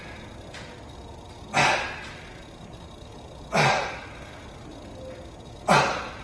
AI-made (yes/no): no